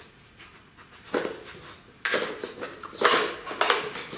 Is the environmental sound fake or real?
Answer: real